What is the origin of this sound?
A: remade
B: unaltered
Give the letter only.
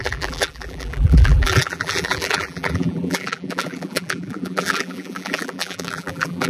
A